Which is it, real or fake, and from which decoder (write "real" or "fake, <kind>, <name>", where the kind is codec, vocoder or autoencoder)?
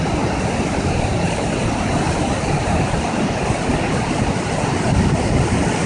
real